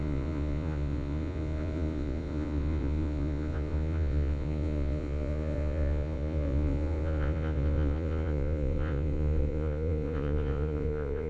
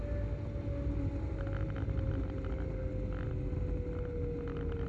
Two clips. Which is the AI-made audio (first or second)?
first